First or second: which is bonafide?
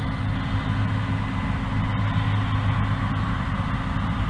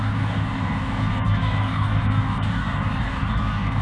first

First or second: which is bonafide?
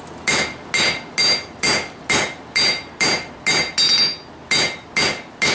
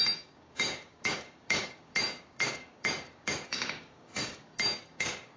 first